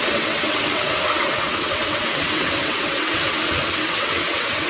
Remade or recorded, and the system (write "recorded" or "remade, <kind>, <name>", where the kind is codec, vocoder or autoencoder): remade, vocoder, WaveNeXt